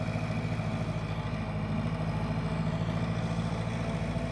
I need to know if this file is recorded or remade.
recorded